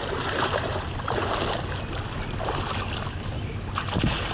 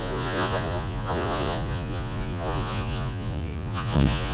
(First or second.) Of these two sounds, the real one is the first